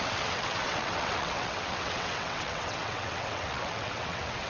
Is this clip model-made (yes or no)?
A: yes